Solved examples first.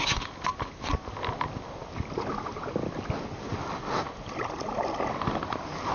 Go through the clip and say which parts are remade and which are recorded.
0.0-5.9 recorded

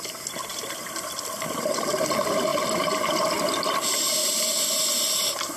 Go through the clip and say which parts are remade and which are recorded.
0.0-4.2 recorded; 4.2-5.6 remade

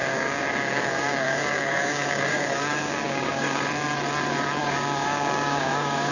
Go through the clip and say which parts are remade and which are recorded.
0.0-3.7 remade; 3.7-4.6 recorded; 4.6-6.1 remade

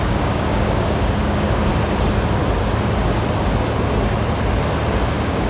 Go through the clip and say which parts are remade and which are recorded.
0.0-1.7 remade; 1.7-5.0 recorded; 5.0-5.5 remade